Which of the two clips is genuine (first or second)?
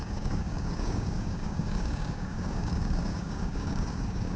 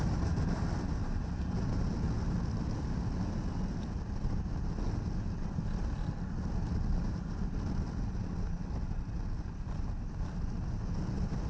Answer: second